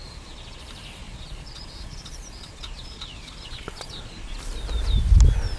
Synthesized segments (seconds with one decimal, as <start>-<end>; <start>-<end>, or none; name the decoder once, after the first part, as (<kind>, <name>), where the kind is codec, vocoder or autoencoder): 0.0-0.6 (vocoder, Vocos); 1.0-4.4